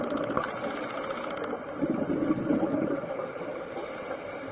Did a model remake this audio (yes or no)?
no